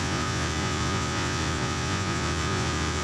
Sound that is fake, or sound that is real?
fake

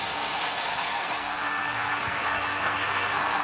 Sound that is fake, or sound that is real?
fake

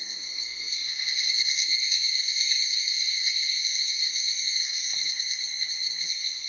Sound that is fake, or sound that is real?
fake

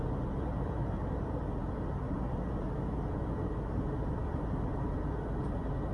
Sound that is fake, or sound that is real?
real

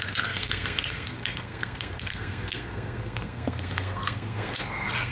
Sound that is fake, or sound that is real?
fake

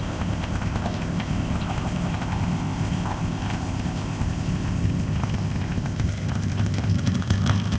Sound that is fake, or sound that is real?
fake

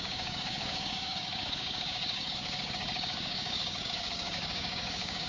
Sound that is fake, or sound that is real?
fake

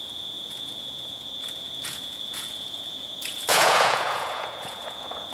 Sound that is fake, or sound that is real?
fake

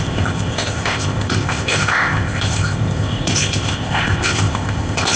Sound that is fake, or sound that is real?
fake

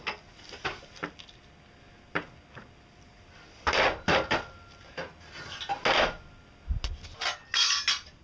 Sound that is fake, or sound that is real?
real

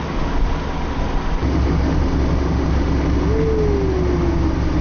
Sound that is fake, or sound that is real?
real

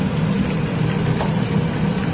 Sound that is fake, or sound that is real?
real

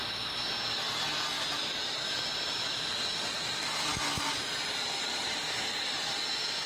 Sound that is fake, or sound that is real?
real